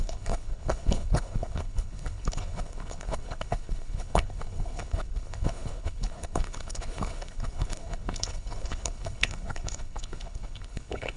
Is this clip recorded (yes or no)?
no